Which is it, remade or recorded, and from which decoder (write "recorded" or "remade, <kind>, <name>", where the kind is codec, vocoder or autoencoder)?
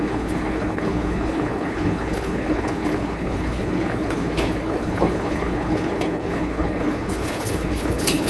remade, codec, HILCodec